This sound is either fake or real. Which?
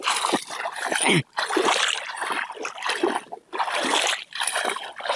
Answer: real